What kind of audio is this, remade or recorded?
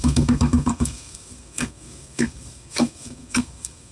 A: remade